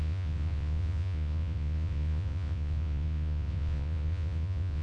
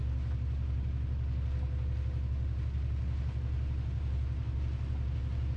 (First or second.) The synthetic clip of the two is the first